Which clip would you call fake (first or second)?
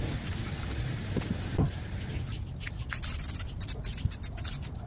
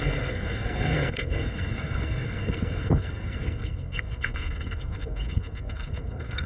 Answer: second